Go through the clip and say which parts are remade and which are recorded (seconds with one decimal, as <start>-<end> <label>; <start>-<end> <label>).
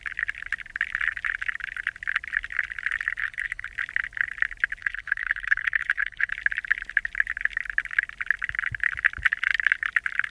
0.0-3.2 recorded; 3.2-3.7 remade; 3.7-4.8 recorded; 4.8-6.3 remade; 6.3-10.3 recorded